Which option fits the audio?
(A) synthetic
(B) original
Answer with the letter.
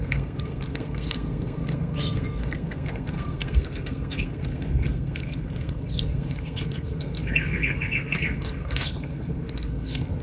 A